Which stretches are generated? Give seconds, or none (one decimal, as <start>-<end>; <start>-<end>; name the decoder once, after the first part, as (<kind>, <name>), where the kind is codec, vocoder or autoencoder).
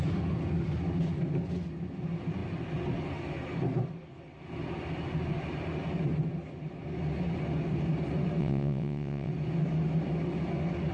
8.4-9.3 (vocoder, WaveNeXt)